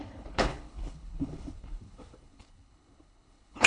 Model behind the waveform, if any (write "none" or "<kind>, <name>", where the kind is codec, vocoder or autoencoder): codec, HILCodec